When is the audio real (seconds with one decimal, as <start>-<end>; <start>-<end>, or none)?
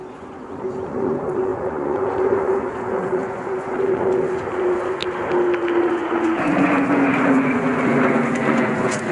5.0-5.8